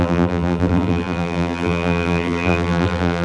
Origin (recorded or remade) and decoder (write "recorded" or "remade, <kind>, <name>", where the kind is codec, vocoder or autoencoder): remade, vocoder, BigVGAN v2